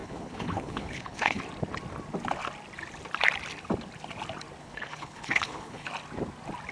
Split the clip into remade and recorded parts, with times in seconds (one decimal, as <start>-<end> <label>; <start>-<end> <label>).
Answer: 0.0-1.4 remade; 1.4-4.6 recorded; 4.6-5.9 remade; 5.9-6.7 recorded